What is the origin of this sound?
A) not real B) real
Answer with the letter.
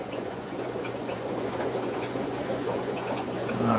A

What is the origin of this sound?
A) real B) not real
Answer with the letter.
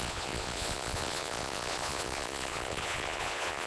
B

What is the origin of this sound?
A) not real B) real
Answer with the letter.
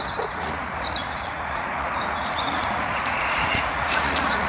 A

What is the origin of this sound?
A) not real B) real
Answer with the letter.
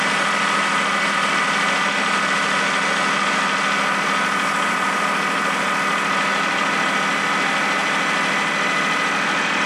B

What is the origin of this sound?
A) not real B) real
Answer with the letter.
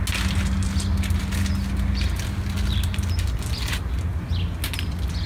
B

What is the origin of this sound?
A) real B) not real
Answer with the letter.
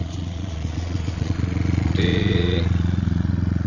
B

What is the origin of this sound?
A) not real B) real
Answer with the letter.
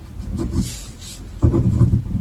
B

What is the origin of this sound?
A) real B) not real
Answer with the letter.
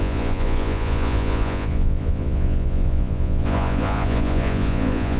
B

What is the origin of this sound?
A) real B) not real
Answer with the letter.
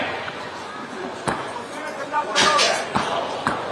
B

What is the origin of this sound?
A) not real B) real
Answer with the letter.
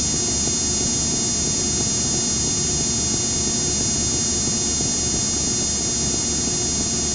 B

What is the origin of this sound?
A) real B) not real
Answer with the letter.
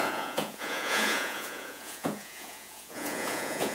B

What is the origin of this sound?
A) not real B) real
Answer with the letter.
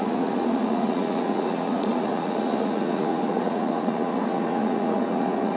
A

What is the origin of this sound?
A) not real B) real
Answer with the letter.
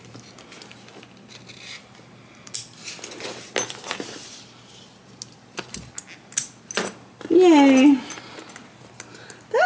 B